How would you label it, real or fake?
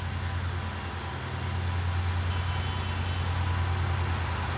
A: real